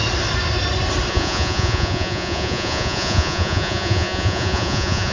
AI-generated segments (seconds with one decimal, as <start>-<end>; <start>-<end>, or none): 1.1-5.1